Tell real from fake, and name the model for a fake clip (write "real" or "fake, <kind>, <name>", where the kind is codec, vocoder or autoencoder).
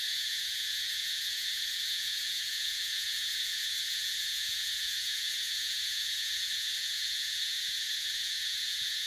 fake, vocoder, Vocos